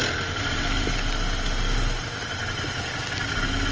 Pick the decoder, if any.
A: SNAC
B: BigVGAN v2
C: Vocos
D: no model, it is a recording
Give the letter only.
D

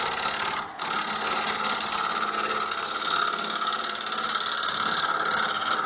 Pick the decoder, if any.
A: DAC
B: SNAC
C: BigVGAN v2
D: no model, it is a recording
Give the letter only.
D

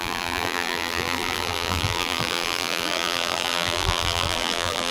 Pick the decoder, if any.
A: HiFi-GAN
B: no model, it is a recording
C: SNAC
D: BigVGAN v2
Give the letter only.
D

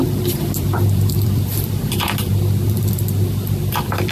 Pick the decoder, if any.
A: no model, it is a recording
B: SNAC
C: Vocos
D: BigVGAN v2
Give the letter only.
D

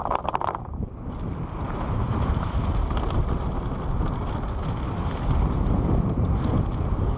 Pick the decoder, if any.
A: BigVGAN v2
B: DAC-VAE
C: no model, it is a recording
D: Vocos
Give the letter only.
C